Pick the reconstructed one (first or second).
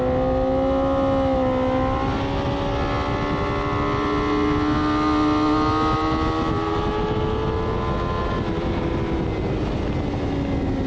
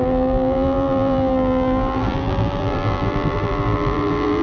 second